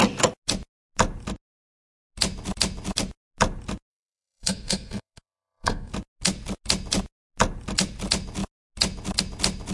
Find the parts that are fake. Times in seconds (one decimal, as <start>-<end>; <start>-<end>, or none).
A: 3.9-5.9